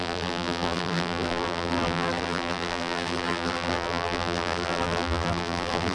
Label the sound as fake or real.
fake